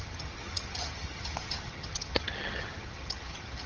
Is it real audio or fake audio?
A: fake